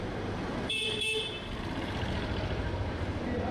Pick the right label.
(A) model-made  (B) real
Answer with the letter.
A